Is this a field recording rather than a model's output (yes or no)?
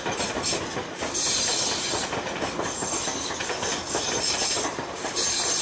yes